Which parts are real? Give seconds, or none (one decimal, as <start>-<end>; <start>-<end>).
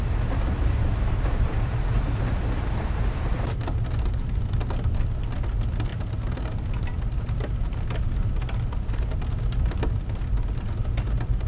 0.0-11.5